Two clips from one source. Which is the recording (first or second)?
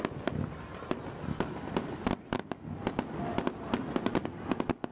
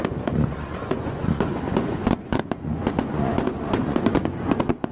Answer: first